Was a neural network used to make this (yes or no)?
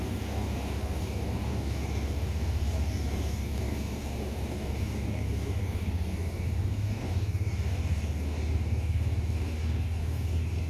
yes